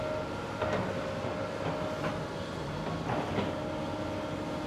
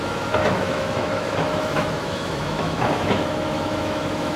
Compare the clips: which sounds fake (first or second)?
second